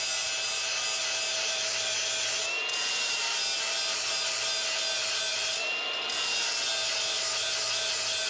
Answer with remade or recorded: recorded